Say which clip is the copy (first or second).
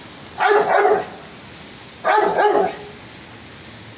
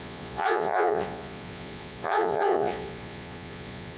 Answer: second